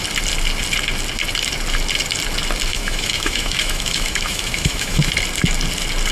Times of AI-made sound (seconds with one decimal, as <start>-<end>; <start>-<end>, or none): 2.7-5.1